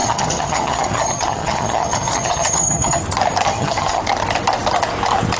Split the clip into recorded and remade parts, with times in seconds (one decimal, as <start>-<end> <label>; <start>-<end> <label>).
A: 0.0-3.0 remade; 3.0-3.5 recorded; 3.5-4.0 remade; 4.0-5.4 recorded